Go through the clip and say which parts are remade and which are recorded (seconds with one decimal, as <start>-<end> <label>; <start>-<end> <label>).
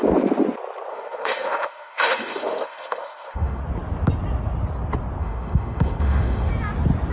0.0-0.9 recorded; 0.9-3.6 remade; 3.6-5.2 recorded; 5.2-6.5 remade; 6.5-7.1 recorded